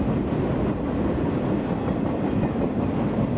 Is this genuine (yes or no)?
yes